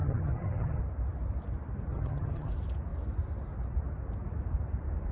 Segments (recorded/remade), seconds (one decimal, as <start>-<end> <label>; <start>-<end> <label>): 0.0-0.8 remade; 0.8-1.9 recorded; 1.9-2.5 remade; 2.5-5.1 recorded